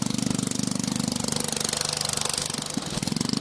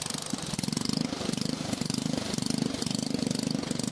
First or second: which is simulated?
second